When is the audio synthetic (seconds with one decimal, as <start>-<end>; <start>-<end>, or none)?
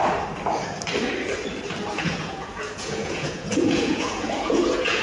1.9-5.0